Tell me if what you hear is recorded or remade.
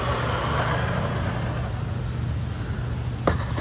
recorded